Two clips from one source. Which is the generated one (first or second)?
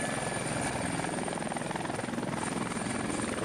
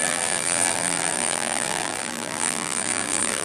second